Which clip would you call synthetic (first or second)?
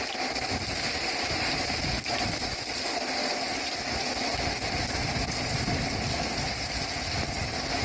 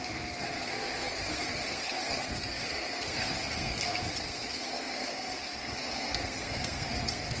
second